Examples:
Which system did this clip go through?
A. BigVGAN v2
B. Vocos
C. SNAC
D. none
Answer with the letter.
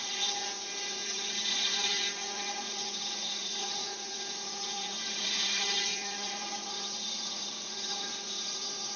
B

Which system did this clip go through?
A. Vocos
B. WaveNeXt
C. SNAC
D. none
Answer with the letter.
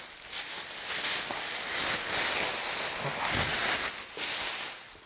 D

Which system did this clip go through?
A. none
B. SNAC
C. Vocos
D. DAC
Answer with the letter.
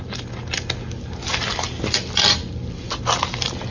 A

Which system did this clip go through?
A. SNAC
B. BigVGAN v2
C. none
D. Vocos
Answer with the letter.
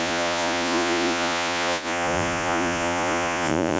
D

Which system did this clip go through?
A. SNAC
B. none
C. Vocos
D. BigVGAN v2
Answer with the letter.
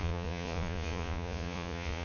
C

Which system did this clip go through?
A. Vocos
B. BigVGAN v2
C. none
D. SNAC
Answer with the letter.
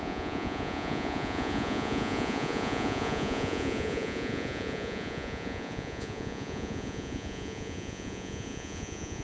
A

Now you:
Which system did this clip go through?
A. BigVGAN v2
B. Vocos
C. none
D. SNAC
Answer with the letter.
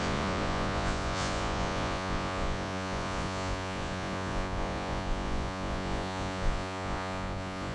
B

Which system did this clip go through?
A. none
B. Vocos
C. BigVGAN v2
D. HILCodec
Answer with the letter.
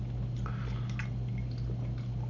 A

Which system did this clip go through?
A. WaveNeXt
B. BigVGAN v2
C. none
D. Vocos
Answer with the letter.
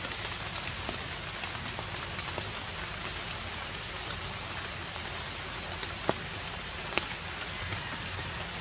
C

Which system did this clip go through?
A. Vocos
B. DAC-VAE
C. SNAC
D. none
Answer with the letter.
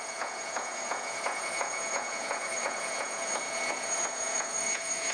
A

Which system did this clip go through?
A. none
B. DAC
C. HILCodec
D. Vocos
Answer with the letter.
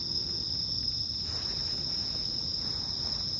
A